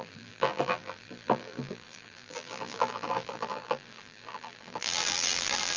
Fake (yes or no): yes